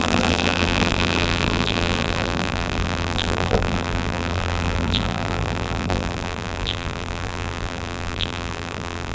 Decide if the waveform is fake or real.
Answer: fake